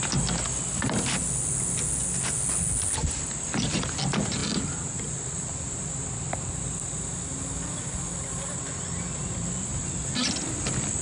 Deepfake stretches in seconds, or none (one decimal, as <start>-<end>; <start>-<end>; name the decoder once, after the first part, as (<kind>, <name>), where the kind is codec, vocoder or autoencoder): 3.0-3.6 (vocoder, BigVGAN v2); 4.4-5.9